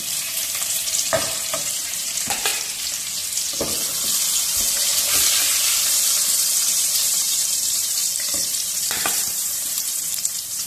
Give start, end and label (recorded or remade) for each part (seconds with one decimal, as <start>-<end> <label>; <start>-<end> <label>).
0.0-2.5 remade; 2.5-4.4 recorded; 4.4-4.9 remade; 4.9-6.7 recorded; 6.7-10.7 remade